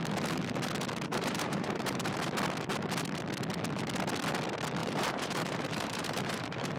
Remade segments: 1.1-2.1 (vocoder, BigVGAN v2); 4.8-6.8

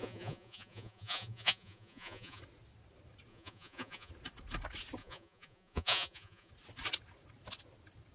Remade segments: 0.0-2.4 (vocoder, Vocos); 3.3-4.1; 5.0-6.5

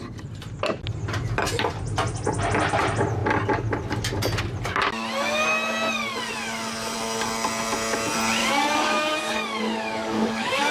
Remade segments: 8.4-10.7 (codec, DAC)

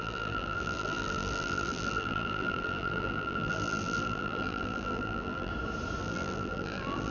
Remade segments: 0.0-5.5 (vocoder, BigVGAN v2); 6.0-7.1

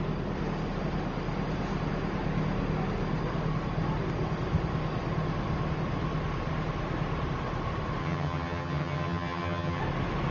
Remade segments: 8.0-9.8 (vocoder, HiFi-GAN)